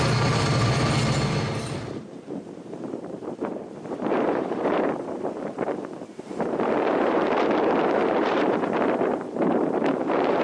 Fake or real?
fake